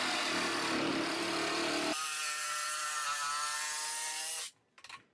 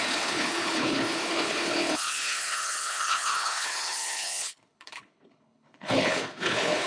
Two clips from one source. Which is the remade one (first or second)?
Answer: second